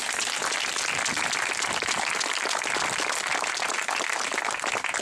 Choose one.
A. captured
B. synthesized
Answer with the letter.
A